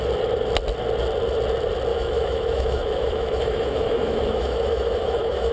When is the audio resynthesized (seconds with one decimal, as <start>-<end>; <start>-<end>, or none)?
1.9-5.5